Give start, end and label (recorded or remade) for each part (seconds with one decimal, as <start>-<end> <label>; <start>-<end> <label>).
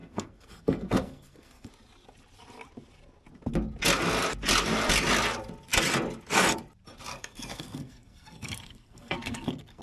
0.0-1.7 remade; 1.7-7.1 recorded; 7.1-9.8 remade